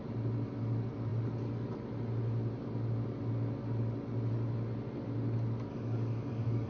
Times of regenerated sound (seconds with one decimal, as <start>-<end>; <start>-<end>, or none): 5.7-6.7